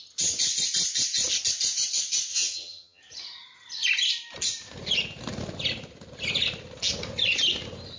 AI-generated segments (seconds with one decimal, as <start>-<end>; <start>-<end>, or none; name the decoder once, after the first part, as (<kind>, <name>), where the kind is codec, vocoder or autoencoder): 2.3-3.0 (vocoder, HiFi-GAN)